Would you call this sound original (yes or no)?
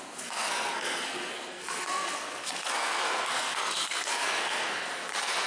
no